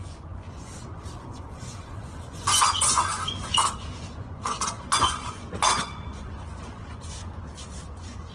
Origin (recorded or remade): remade